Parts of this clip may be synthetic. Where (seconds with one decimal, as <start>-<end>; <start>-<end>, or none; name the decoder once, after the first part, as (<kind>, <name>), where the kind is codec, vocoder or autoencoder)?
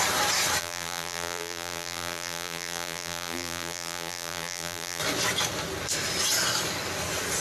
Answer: 0.6-5.0 (vocoder, BigVGAN v2)